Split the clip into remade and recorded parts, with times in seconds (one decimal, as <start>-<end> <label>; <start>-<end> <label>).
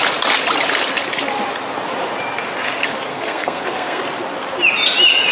0.0-3.1 recorded; 3.1-4.0 remade; 4.0-5.3 recorded